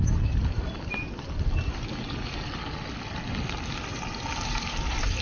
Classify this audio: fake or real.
real